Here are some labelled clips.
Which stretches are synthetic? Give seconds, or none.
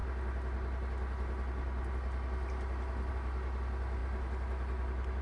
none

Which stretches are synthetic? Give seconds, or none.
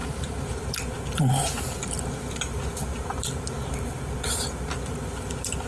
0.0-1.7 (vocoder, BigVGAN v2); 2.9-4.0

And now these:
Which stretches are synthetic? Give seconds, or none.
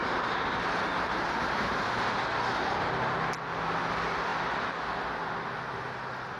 0.0-1.9 (vocoder, BigVGAN v2)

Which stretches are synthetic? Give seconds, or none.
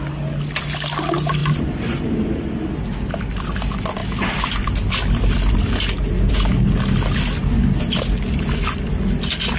none